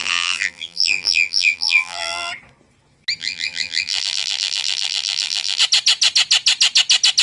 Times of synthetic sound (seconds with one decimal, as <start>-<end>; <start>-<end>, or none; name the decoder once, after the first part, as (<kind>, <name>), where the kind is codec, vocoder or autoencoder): 0.0-2.3 (vocoder, BigVGAN v2); 3.2-5.6